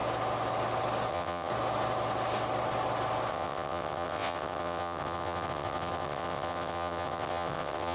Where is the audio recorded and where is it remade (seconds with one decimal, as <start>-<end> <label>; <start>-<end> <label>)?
0.0-1.1 recorded; 1.1-1.5 remade; 1.5-3.3 recorded; 3.3-7.9 remade